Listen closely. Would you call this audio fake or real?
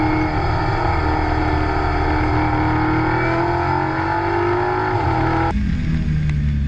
real